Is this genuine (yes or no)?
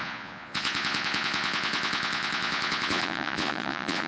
no